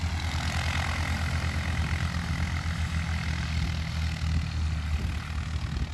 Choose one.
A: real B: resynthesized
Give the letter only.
A